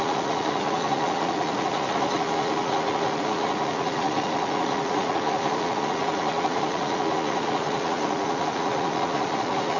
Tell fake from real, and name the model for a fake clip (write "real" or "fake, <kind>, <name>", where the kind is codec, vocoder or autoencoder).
fake, vocoder, Vocos